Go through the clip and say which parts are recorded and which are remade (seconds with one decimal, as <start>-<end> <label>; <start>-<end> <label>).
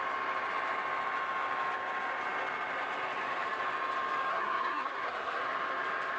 0.0-4.3 recorded; 4.3-5.4 remade; 5.4-6.2 recorded